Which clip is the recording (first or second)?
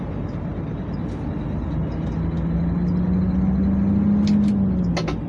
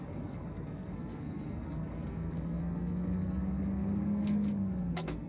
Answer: first